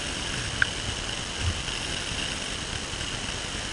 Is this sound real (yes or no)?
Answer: yes